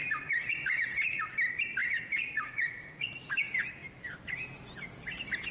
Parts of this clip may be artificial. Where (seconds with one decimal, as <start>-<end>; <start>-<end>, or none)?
0.0-1.2; 1.8-3.3